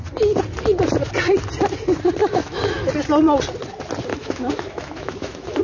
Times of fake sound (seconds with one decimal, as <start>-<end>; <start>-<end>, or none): 2.2-2.9; 4.1-5.6